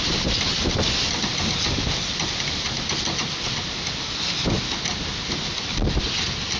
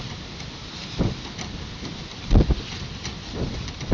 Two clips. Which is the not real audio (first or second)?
second